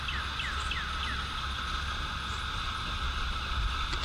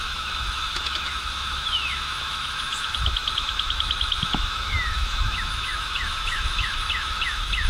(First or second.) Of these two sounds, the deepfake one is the second